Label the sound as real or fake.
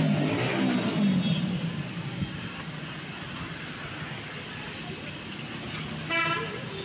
real